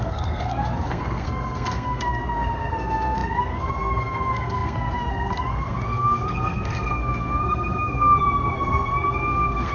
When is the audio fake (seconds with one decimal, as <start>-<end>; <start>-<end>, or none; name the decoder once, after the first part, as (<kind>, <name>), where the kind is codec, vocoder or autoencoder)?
0.0-9.7 (codec, SNAC)